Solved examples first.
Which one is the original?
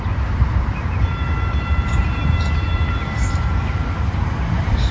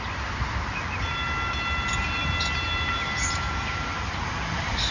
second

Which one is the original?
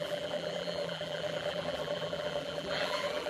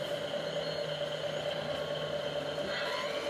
second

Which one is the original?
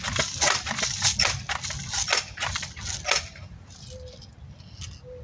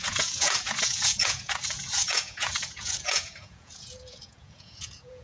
first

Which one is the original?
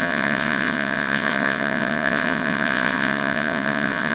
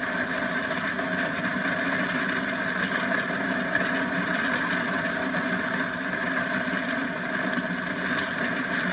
second